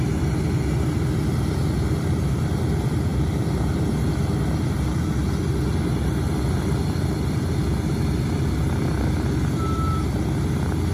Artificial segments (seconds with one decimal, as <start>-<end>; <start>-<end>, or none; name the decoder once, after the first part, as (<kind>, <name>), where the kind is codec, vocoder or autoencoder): none